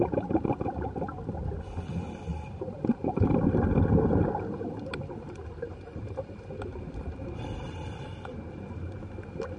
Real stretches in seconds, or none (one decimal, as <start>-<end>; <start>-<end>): 0.0-2.3; 3.4-4.5; 8.9-9.6